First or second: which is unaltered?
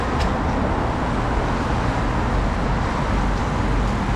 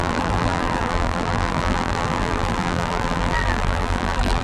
first